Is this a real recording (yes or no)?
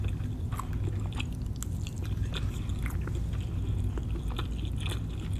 yes